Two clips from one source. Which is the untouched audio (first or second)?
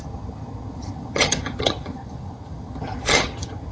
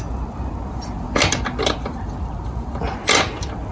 second